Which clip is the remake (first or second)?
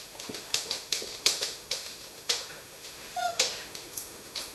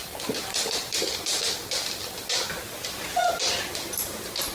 first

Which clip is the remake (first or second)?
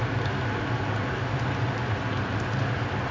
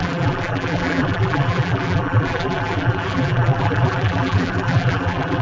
second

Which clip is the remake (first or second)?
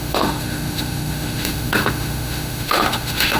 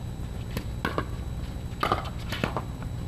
first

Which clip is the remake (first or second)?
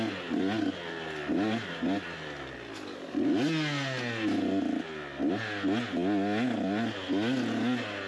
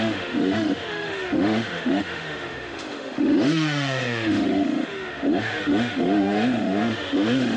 second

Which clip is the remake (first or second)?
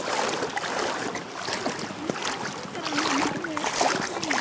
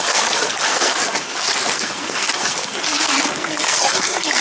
second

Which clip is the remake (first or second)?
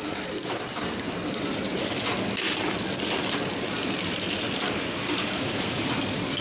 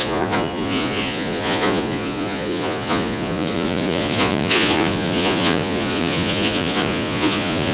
second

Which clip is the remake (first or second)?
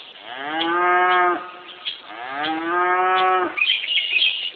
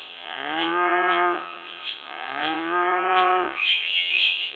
second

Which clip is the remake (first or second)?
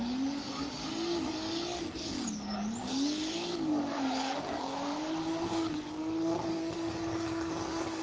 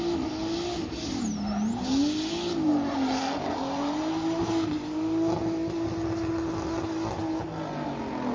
first